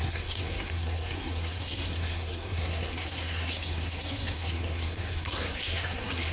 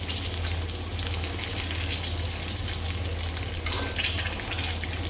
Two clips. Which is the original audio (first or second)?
second